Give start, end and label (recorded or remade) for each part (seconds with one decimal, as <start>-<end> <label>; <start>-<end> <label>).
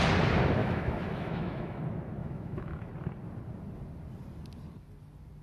0.0-0.6 recorded; 0.6-1.8 remade; 1.8-2.2 recorded; 2.2-2.9 remade; 2.9-5.4 recorded